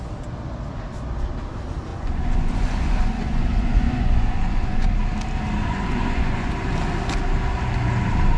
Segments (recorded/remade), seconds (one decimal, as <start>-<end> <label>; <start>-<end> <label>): 0.0-1.9 recorded; 1.9-4.9 remade; 4.9-5.6 recorded; 5.6-6.5 remade; 6.5-8.4 recorded